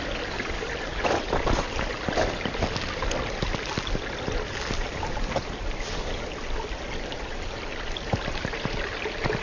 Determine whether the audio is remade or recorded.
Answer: recorded